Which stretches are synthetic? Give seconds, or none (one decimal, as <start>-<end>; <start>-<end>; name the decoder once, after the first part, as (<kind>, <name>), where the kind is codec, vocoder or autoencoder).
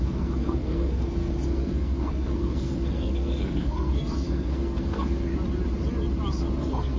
0.0-5.3 (codec, SNAC); 6.6-7.0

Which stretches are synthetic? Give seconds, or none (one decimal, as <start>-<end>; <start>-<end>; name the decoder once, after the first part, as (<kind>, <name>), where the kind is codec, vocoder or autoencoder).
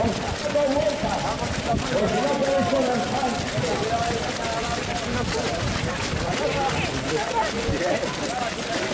none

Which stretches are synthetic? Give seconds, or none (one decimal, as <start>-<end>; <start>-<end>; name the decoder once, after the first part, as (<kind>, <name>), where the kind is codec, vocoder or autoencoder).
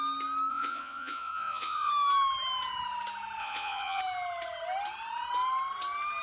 0.5-1.9 (vocoder, Vocos); 3.4-4.0